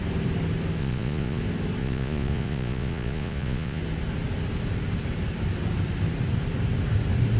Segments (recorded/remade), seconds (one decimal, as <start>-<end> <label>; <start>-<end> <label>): 0.0-0.8 recorded; 0.8-1.4 remade; 1.4-1.8 recorded; 1.8-3.8 remade; 3.8-7.4 recorded